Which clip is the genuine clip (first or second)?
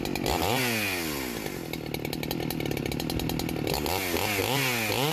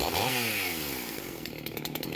first